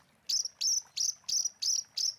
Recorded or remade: recorded